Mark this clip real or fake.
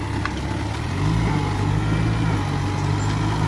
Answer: real